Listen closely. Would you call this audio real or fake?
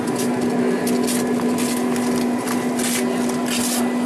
real